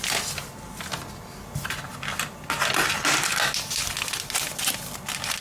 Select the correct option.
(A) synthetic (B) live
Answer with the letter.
B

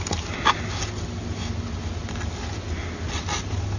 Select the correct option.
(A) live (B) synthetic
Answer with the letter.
A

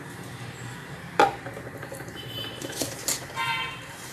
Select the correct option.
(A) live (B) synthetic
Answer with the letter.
B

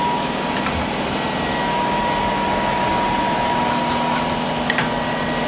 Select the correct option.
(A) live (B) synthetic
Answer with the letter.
A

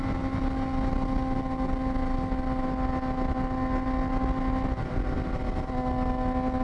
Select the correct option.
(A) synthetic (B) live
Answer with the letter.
B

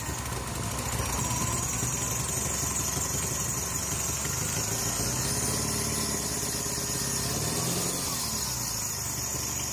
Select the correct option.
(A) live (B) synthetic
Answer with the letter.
A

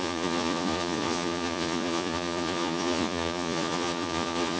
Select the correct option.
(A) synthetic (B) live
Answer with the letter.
A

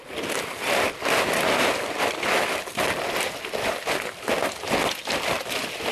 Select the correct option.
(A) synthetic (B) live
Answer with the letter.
B